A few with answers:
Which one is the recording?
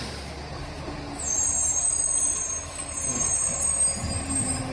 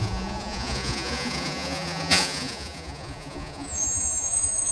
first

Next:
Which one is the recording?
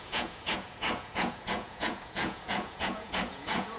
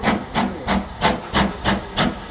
second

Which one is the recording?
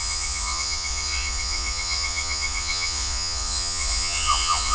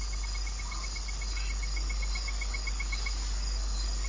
second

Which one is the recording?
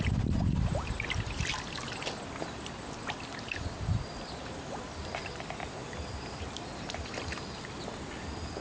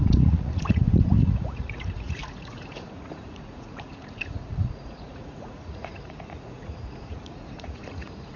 first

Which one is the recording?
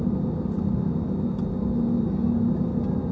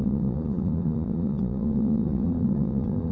first